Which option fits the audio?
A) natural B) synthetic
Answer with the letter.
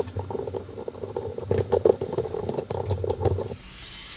A